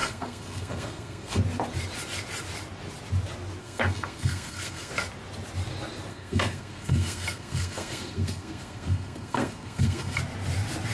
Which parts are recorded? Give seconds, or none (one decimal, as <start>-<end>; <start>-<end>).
1.4-3.6; 4.9-6.1; 10.2-10.9